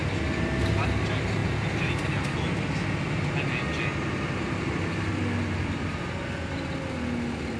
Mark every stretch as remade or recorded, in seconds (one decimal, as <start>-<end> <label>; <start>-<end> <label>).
0.0-7.6 recorded